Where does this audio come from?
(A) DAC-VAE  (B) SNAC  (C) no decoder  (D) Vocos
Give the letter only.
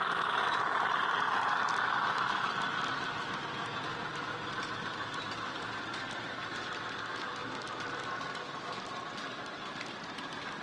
C